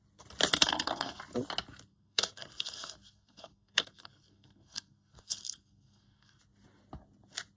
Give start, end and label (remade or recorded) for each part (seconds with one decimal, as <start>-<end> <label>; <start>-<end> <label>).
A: 0.0-0.5 recorded; 0.5-1.2 remade; 1.2-1.9 recorded; 1.9-6.4 remade; 6.4-7.6 recorded